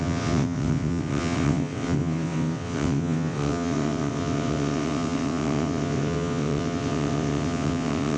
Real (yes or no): no